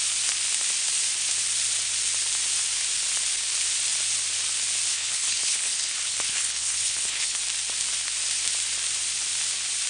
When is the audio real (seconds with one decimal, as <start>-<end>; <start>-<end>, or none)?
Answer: 0.0-4.9; 7.4-9.9